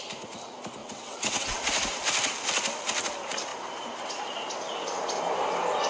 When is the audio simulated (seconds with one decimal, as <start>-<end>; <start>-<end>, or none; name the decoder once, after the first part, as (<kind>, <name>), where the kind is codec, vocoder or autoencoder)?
0.8-1.6 (vocoder, WaveNeXt)